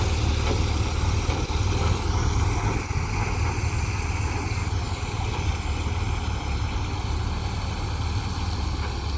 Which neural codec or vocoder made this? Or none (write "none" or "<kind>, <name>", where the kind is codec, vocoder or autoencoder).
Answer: none